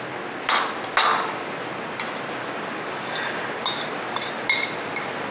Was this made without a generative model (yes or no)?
yes